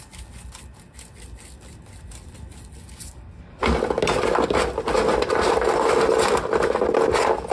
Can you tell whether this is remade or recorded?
recorded